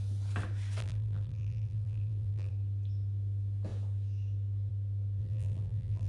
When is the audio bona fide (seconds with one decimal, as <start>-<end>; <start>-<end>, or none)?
0.0-0.8; 2.5-5.2